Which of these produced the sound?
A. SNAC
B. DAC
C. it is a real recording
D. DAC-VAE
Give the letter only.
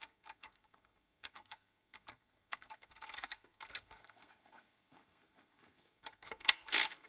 A